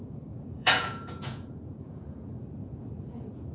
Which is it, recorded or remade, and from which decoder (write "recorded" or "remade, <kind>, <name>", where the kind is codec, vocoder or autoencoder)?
remade, vocoder, Vocos